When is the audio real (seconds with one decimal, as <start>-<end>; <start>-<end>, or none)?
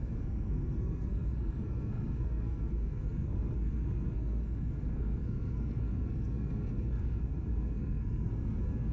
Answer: none